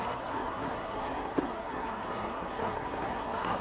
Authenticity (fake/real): fake